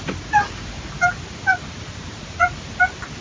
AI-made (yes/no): no